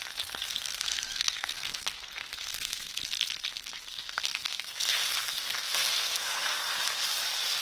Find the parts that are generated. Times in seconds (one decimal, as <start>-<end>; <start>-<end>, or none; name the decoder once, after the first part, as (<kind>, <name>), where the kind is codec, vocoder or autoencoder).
0.5-3.0 (codec, SNAC); 3.5-6.7

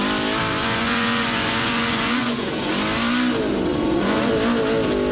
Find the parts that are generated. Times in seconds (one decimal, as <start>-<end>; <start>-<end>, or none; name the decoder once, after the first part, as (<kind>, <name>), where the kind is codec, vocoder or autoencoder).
0.5-2.7 (vocoder, Vocos); 3.7-4.3